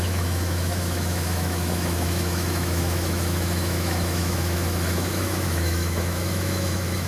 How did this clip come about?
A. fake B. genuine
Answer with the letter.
A